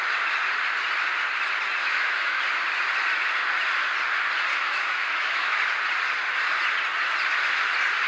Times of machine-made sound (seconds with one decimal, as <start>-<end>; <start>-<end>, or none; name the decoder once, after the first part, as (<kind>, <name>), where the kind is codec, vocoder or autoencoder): 1.8-2.4 (autoencoder, DAC-VAE); 4.5-5.6